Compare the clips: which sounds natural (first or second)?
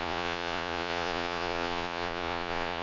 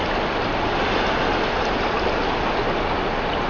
second